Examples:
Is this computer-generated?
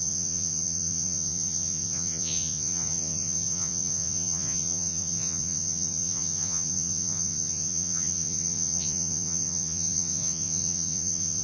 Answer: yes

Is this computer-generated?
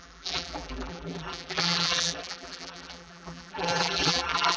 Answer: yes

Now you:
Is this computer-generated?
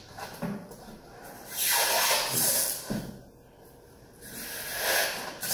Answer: no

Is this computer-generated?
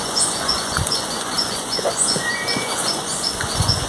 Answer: yes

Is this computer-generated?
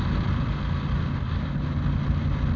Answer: no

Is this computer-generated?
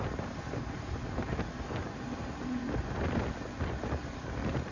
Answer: yes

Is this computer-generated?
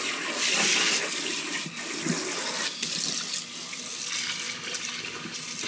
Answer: no